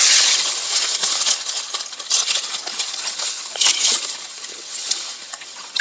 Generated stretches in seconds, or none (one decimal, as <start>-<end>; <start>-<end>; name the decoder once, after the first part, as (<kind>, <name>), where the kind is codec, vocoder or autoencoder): 0.0-5.8 (vocoder, HiFi-GAN)